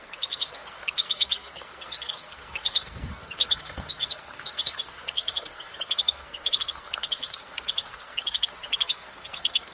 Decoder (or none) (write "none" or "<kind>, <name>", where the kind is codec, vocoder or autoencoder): codec, SNAC